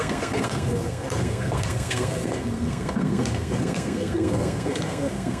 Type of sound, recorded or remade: remade